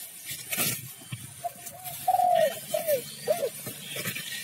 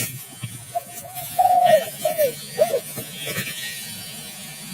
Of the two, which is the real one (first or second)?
first